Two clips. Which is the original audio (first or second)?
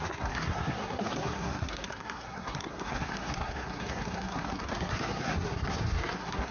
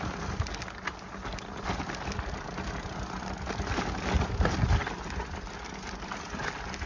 second